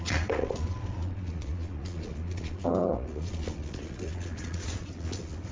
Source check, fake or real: fake